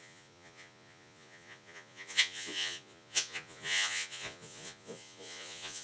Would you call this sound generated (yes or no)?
yes